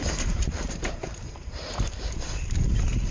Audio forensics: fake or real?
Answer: fake